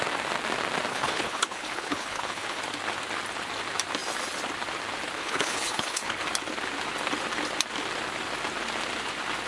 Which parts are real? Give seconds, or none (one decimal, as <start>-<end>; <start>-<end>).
0.0-0.9; 2.6-5.2; 6.2-9.5